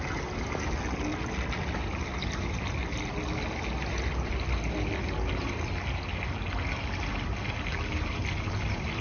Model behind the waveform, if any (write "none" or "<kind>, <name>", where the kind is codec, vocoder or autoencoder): none